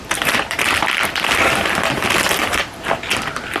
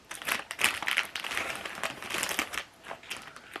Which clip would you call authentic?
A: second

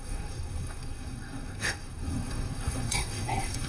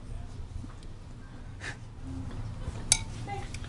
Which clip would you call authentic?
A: second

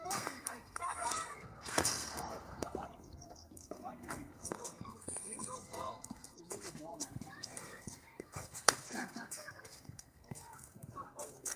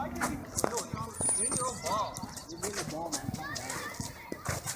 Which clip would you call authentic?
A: second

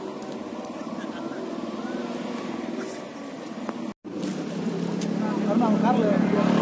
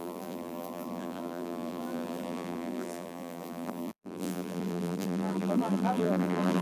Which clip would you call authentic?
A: first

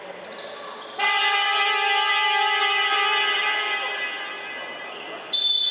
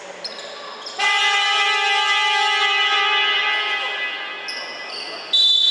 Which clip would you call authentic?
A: second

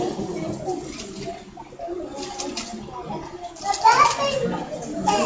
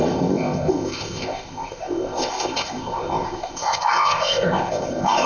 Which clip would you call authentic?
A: first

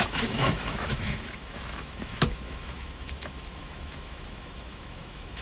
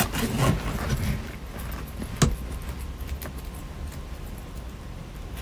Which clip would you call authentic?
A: second